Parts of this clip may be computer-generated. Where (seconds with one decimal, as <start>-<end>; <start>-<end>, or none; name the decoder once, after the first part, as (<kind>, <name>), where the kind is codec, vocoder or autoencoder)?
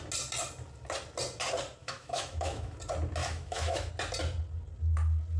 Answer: 1.8-2.8 (autoencoder, DAC-VAE); 3.2-3.9